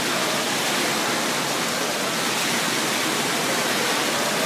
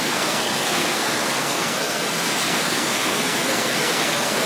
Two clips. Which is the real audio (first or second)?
first